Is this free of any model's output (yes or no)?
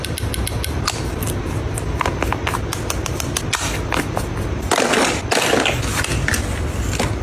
yes